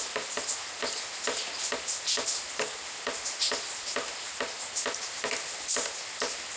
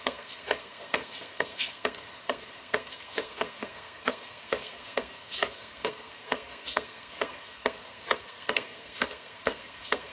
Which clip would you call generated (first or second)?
second